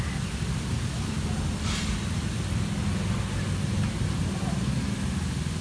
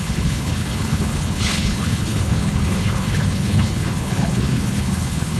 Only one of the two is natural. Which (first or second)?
first